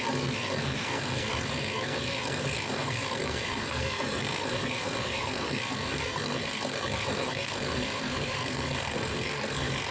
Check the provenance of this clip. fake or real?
fake